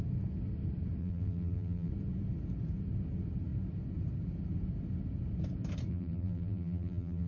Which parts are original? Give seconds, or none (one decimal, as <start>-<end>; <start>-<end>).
0.0-1.0; 1.9-5.9